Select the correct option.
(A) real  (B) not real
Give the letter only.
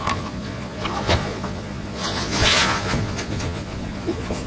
B